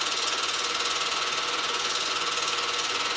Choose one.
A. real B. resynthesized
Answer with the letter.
B